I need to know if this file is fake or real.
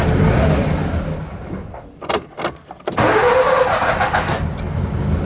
real